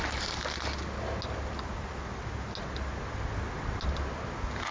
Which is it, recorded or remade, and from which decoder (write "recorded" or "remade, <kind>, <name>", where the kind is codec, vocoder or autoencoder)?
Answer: recorded